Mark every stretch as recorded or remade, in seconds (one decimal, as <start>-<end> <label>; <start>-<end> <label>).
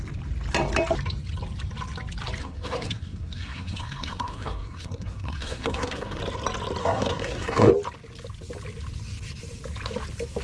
0.0-2.4 recorded; 2.4-6.2 remade; 6.2-6.8 recorded; 6.8-7.7 remade; 7.7-10.4 recorded